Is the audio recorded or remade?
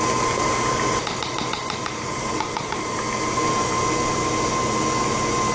recorded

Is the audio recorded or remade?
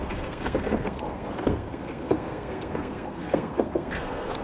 remade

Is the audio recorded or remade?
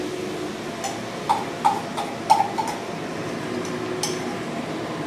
recorded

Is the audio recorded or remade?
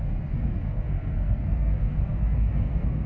remade